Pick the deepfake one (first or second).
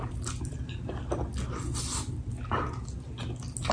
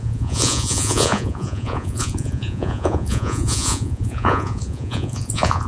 second